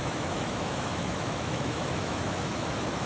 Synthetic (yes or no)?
yes